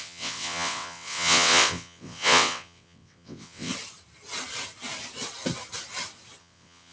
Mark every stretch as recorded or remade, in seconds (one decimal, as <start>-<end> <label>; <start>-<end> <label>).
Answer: 0.0-3.7 remade; 3.7-6.4 recorded; 6.4-6.9 remade